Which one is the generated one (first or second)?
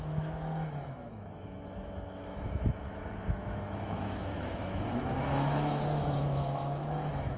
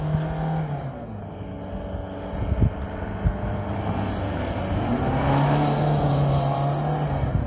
first